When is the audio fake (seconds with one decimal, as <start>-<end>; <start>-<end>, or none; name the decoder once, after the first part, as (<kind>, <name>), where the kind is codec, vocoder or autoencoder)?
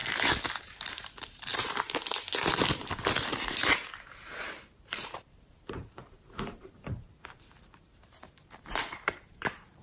0.6-1.5 (vocoder, BigVGAN v2); 4.1-9.8